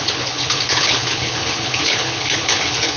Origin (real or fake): fake